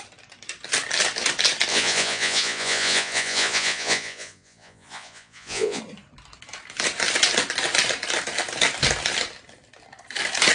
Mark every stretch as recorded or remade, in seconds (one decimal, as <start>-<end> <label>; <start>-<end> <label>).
0.0-1.7 recorded; 1.7-5.8 remade; 5.8-10.5 recorded